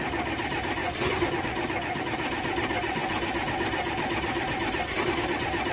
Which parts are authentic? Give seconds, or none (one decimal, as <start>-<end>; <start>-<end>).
0.0-0.8; 2.0-5.7